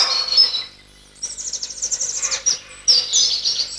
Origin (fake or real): real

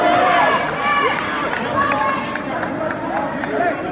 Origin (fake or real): real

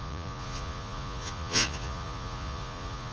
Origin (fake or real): fake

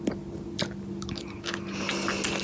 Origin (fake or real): real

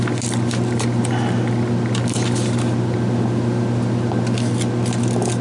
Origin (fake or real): real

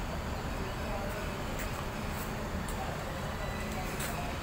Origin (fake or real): real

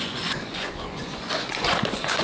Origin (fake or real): fake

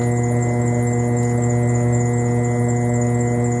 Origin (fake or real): real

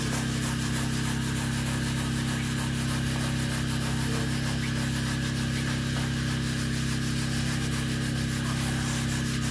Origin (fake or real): real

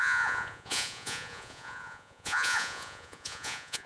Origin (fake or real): fake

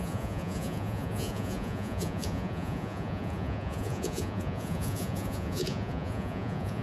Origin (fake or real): fake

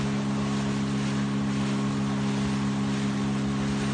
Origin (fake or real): real